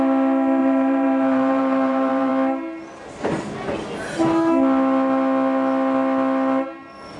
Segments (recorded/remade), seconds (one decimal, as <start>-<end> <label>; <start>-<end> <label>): 0.0-0.6 recorded; 0.6-2.3 remade; 2.3-7.2 recorded